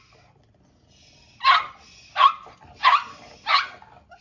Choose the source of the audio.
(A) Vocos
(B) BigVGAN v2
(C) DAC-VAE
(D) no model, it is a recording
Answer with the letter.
D